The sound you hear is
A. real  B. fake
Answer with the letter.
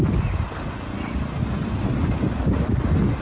A